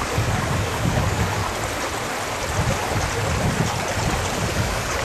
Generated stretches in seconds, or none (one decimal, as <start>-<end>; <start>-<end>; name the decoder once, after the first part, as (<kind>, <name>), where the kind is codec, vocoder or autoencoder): 0.0-1.4 (codec, DAC); 4.4-5.0